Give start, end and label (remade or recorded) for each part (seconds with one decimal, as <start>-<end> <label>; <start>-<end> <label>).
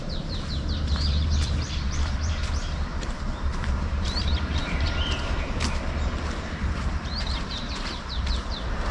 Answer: 0.0-8.9 remade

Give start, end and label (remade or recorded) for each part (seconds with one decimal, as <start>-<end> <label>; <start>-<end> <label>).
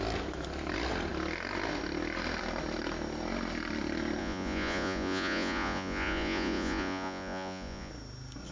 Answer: 0.0-4.2 recorded; 4.2-7.9 remade; 7.9-8.5 recorded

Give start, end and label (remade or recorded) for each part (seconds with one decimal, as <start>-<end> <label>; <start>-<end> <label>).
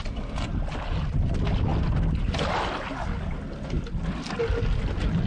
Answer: 0.0-5.3 recorded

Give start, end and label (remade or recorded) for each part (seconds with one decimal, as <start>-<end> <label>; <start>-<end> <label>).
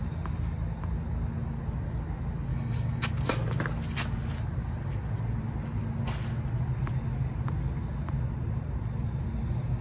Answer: 0.0-2.5 recorded; 2.5-3.1 remade; 3.1-9.8 recorded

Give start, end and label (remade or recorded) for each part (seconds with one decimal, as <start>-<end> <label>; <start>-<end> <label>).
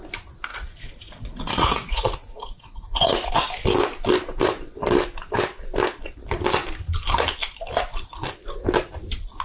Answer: 0.0-0.5 recorded; 0.5-3.3 remade; 3.3-9.4 recorded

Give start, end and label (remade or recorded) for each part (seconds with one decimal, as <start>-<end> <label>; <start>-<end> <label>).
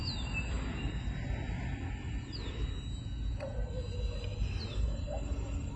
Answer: 0.0-5.8 recorded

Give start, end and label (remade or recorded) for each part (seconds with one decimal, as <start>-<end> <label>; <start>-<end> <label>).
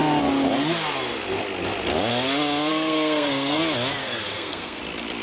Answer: 0.0-2.7 recorded; 2.7-3.6 remade; 3.6-4.0 recorded; 4.0-4.8 remade; 4.8-5.2 recorded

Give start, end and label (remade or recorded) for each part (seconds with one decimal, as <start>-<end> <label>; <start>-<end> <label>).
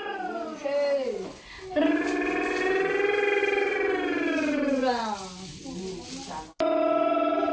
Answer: 0.0-7.5 recorded